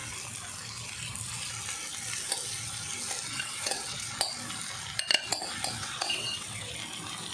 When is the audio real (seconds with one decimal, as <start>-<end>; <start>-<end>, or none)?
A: 0.0-3.3; 4.1-5.8; 6.7-7.3